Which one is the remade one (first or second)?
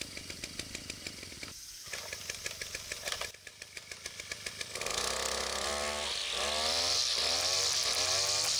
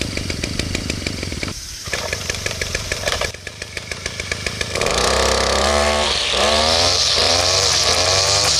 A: second